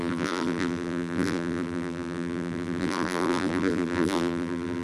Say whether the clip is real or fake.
fake